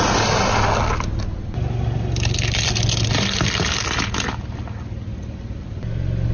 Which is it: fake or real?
real